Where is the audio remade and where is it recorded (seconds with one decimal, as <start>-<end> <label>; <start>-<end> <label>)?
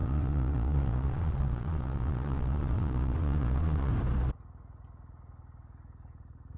0.0-3.9 remade; 3.9-6.6 recorded